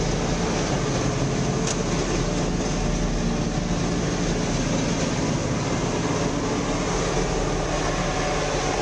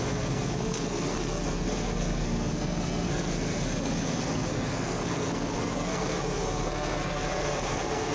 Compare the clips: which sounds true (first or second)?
first